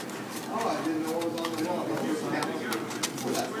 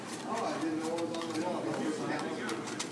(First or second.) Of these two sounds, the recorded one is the first